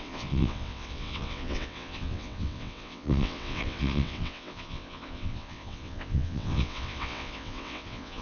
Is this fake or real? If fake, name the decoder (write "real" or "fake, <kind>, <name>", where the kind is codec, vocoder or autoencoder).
fake, vocoder, WaveNeXt